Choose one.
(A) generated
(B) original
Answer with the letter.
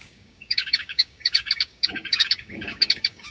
A